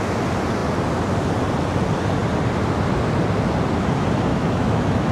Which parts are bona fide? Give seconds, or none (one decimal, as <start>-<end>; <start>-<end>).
0.0-4.3